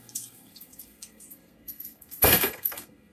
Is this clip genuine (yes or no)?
no